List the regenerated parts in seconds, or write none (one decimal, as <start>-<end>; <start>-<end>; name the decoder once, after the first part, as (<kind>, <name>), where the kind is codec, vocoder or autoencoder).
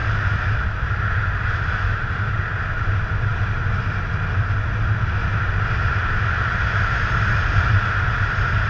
none